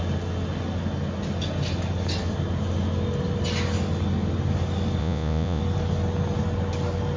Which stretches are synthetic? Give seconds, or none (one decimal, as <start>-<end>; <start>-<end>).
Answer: 5.0-5.6